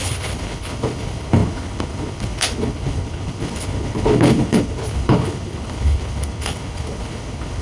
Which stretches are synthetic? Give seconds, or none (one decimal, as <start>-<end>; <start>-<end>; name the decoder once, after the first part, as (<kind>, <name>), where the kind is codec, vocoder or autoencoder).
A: 0.0-7.6 (codec, HILCodec)